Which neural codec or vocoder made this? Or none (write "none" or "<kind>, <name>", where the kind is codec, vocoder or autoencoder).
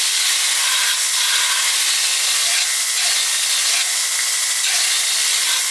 none